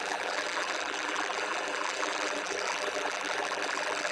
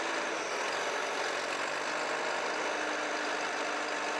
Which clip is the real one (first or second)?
second